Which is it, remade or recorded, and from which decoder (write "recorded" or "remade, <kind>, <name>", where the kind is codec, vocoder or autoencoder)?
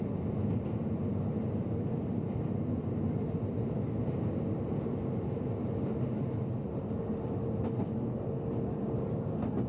recorded